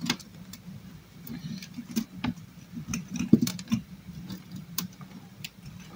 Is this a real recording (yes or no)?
no